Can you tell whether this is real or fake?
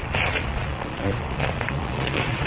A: fake